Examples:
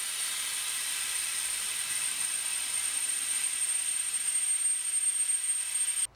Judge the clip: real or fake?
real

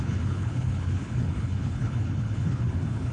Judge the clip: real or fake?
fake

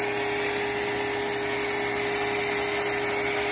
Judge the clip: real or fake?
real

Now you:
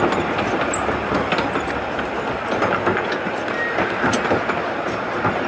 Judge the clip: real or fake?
real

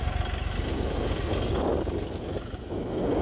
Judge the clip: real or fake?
real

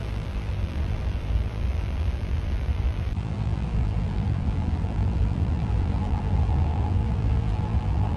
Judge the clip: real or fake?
fake